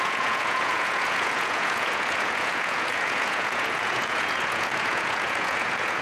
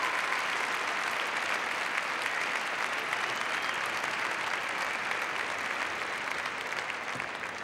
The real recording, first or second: second